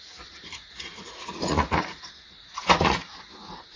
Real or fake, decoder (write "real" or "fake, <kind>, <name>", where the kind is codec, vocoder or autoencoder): fake, vocoder, Vocos